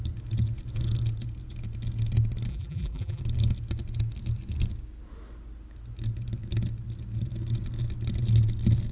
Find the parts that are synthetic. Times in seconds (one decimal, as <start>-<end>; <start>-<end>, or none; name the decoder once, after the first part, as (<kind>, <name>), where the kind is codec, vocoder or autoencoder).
2.5-3.2 (vocoder, BigVGAN v2)

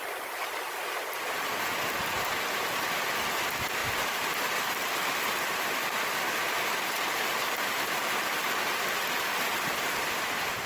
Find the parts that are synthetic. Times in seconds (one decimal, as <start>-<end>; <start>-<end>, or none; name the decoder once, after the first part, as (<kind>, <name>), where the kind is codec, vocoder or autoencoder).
0.0-8.4 (vocoder, BigVGAN v2); 10.0-10.7

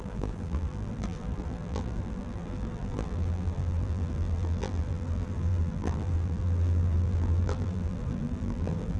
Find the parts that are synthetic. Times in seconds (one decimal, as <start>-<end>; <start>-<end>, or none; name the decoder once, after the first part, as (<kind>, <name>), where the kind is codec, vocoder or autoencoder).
0.0-9.0 (vocoder, BigVGAN v2)

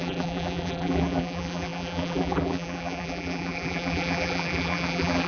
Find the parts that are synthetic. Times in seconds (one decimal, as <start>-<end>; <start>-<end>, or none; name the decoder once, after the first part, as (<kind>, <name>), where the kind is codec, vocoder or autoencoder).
0.0-5.3 (vocoder, BigVGAN v2)

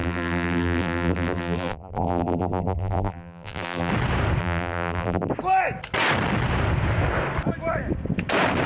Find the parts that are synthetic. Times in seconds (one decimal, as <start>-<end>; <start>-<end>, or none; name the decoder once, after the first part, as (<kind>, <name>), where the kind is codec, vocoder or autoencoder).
0.0-3.9 (vocoder, BigVGAN v2); 4.4-5.3

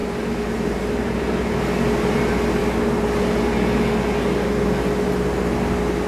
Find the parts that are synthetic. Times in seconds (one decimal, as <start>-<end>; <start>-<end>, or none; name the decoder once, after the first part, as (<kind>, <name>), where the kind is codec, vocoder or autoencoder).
0.0-1.6 (vocoder, BigVGAN v2)

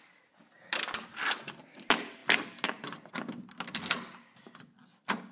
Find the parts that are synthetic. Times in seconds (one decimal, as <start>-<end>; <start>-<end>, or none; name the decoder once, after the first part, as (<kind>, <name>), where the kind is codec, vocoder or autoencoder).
none